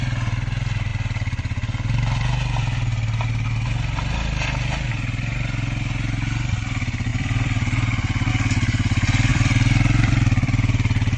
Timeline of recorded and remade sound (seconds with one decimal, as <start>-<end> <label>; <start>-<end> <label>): 0.0-7.1 recorded; 7.1-8.3 remade; 8.3-9.3 recorded; 9.3-11.2 remade